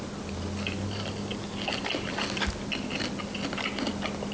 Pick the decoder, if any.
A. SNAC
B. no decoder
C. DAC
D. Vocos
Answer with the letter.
B